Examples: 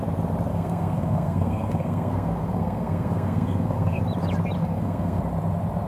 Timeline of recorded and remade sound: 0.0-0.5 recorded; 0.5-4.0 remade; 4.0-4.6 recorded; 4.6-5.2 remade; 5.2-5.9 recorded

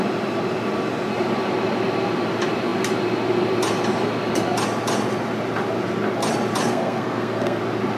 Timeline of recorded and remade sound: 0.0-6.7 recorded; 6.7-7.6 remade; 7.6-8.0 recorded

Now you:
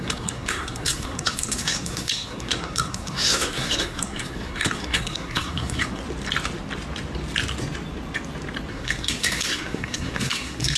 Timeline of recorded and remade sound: 0.0-6.0 remade; 6.0-8.7 recorded; 8.7-10.8 remade

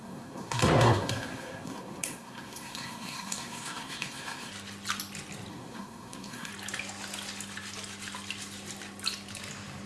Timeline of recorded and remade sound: 0.0-4.5 remade; 4.5-5.5 recorded; 5.5-6.5 remade; 6.5-9.9 recorded